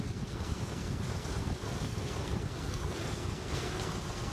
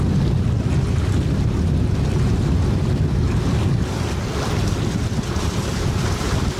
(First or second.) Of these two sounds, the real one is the second